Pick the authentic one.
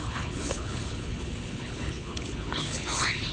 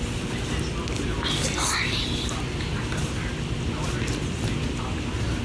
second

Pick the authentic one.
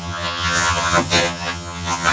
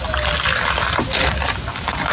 second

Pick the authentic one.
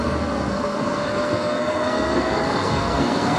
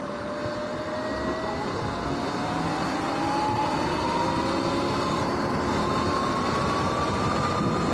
second